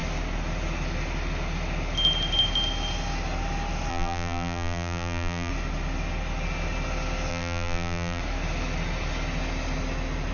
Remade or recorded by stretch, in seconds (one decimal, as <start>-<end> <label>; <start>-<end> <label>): 0.0-3.9 recorded; 3.9-5.5 remade; 5.5-7.3 recorded; 7.3-8.2 remade; 8.2-10.3 recorded